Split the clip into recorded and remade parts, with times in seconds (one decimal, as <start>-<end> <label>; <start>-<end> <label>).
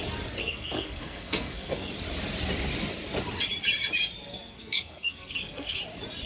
0.0-0.4 recorded; 0.4-1.9 remade; 1.9-4.3 recorded; 4.3-5.8 remade; 5.8-6.3 recorded